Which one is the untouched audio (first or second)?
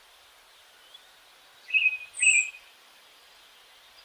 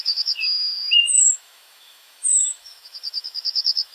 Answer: first